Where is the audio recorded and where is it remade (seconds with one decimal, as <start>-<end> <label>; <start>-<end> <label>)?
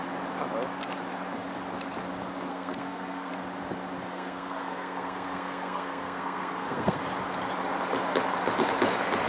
0.0-2.5 recorded; 2.5-3.3 remade; 3.3-4.1 recorded; 4.1-7.0 remade; 7.0-9.3 recorded